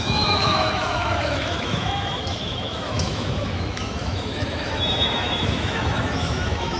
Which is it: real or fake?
fake